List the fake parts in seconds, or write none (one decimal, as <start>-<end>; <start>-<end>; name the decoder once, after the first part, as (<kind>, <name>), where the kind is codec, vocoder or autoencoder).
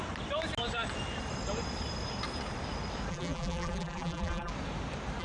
3.1-4.5 (vocoder, BigVGAN v2)